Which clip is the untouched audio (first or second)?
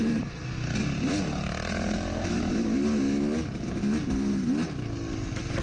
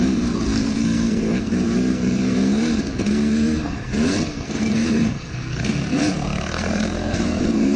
first